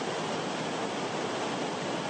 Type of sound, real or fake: real